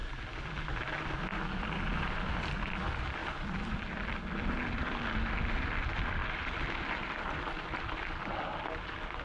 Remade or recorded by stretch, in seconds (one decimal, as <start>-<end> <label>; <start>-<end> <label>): 0.0-3.2 recorded; 3.2-4.2 remade; 4.2-6.2 recorded; 6.2-8.7 remade; 8.7-9.2 recorded

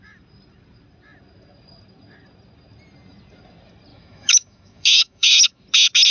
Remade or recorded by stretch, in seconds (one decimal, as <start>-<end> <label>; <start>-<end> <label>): 0.0-3.9 recorded; 3.9-5.6 remade; 5.6-6.1 recorded